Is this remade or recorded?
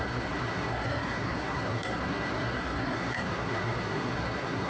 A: remade